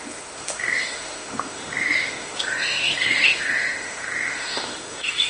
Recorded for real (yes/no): no